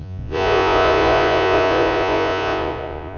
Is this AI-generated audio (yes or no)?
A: yes